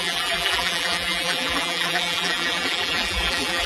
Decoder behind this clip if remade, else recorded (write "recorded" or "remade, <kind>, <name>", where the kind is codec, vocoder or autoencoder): remade, vocoder, BigVGAN v2